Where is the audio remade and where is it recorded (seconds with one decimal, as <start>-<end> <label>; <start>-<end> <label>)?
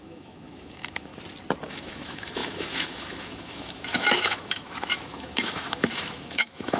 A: 0.0-1.1 remade; 1.1-1.7 recorded; 1.7-6.8 remade